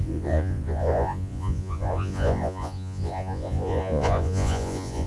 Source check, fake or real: fake